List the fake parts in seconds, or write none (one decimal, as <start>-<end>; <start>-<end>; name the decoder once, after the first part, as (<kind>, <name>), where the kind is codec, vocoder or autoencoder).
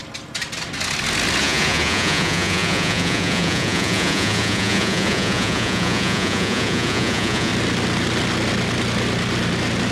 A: 1.4-7.5 (vocoder, Vocos)